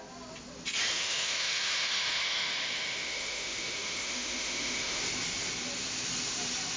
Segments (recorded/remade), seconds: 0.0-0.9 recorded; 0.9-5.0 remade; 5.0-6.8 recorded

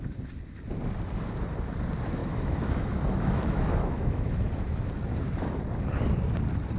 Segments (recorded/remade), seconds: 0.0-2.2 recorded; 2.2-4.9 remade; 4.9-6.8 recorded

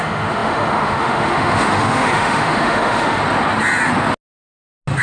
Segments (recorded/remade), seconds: 0.0-3.2 remade; 3.2-5.0 recorded